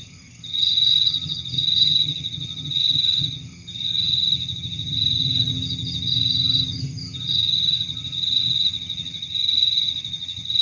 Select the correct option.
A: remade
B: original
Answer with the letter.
A